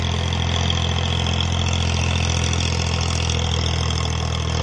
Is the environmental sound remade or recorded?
recorded